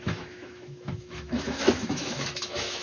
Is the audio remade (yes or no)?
yes